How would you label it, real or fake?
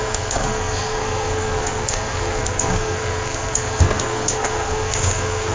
fake